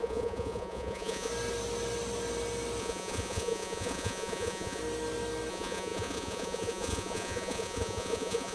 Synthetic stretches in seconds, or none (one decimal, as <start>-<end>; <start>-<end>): 0.0-1.3; 2.8-4.8; 5.5-8.5